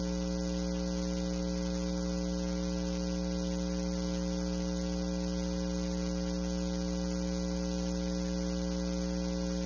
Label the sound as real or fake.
real